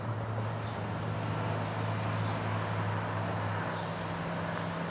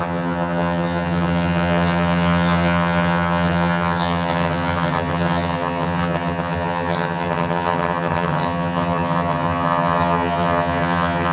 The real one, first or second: first